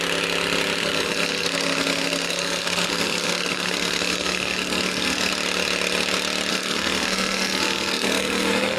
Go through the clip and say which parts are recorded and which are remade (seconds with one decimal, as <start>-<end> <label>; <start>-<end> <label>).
0.0-0.8 recorded; 0.8-5.3 remade; 5.3-6.5 recorded; 6.5-8.8 remade

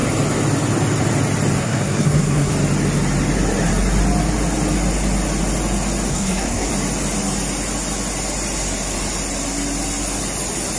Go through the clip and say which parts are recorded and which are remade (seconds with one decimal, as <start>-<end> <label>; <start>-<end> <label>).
0.0-1.6 recorded; 1.6-2.5 remade; 2.5-6.1 recorded; 6.1-6.7 remade; 6.7-10.8 recorded

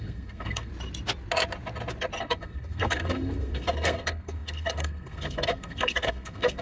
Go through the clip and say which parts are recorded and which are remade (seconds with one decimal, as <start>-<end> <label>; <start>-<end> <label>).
0.0-0.7 remade; 0.7-2.2 recorded; 2.2-6.6 remade

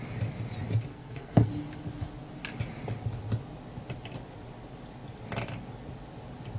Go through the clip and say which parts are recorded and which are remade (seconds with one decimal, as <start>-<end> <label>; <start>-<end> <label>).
0.0-0.9 recorded; 0.9-1.5 remade; 1.5-6.6 recorded

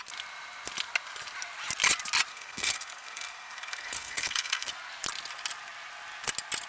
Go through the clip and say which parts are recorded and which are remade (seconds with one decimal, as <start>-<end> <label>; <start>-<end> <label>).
0.0-2.3 recorded; 2.3-4.7 remade; 4.7-6.7 recorded

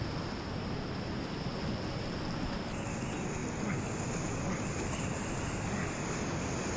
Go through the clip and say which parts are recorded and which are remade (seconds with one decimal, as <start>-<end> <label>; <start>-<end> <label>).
0.0-6.8 recorded

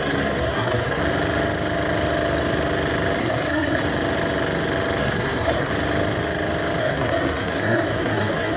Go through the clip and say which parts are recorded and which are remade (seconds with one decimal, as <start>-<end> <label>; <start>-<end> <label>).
0.0-1.0 remade; 1.0-3.2 recorded; 3.2-3.8 remade; 3.8-5.0 recorded; 5.0-5.7 remade; 5.7-6.8 recorded; 6.8-8.6 remade

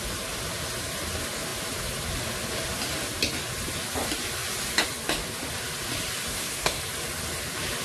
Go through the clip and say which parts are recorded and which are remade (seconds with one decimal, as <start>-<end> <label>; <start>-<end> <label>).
0.0-6.3 recorded; 6.3-6.8 remade; 6.8-7.8 recorded